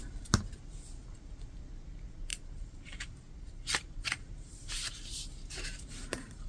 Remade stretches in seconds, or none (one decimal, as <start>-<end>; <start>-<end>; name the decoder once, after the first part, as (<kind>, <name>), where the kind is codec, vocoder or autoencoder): 2.3-6.5 (vocoder, BigVGAN v2)